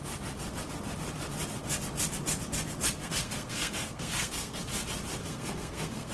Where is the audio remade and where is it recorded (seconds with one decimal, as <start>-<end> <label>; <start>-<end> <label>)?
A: 0.0-3.0 recorded; 3.0-4.6 remade; 4.6-5.2 recorded; 5.2-6.1 remade